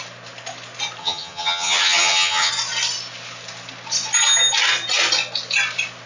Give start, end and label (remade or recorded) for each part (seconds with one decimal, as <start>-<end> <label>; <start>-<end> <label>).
0.0-1.0 recorded; 1.0-2.5 remade; 2.5-6.1 recorded